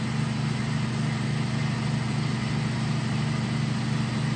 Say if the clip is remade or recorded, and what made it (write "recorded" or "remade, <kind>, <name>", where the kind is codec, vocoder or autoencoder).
recorded